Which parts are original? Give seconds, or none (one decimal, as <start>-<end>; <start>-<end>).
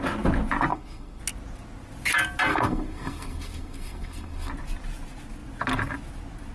0.0-0.7; 1.2-2.5; 4.5-6.5